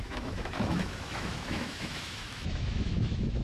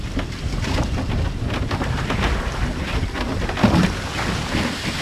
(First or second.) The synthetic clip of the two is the first